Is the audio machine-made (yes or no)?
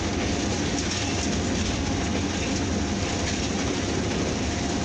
no